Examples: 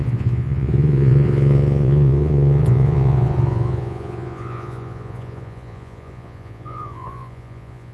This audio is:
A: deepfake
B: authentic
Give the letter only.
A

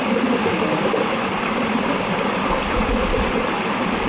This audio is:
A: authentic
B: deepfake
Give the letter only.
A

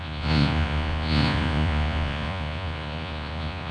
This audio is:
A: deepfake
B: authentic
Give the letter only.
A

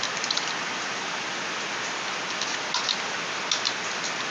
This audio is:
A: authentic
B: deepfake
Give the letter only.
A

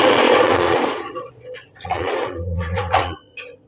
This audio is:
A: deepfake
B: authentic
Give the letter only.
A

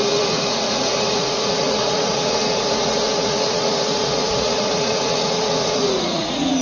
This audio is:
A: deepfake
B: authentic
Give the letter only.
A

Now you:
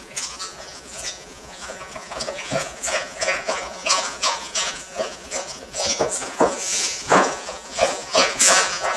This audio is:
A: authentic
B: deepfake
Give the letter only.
B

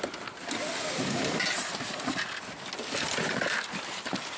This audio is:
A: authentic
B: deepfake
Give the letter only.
A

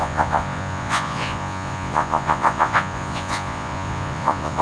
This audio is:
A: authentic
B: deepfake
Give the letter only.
B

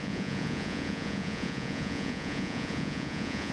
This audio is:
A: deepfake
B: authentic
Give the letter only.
A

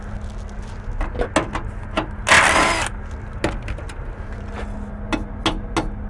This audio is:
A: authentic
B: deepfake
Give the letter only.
A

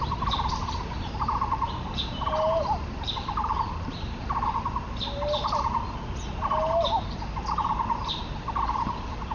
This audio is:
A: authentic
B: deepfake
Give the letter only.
A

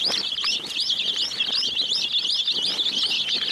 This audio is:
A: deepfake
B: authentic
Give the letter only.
B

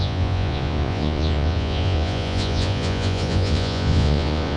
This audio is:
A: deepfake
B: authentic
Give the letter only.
A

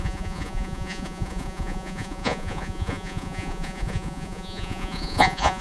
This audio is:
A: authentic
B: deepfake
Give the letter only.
B